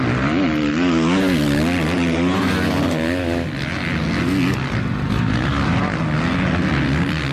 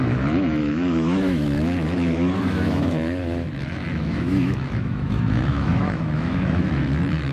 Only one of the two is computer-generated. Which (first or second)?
second